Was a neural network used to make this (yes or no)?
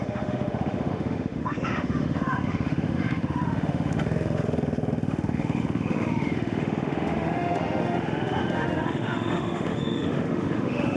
yes